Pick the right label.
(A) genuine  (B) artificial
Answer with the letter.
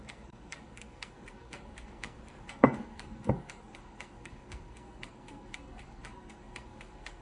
B